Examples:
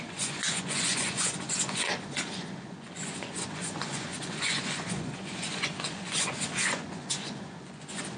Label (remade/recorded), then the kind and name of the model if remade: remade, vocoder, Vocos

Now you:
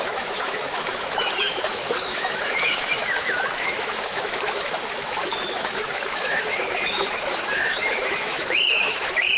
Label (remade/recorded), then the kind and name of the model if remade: remade, autoencoder, DAC-VAE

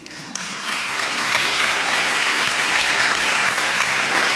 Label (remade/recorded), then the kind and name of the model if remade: remade, codec, SNAC